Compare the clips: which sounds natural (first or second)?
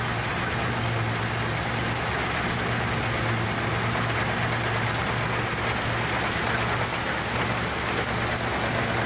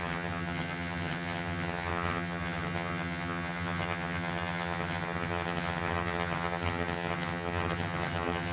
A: first